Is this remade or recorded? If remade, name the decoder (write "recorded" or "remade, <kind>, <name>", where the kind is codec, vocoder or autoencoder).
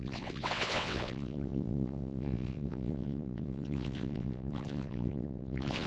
remade, vocoder, WaveNeXt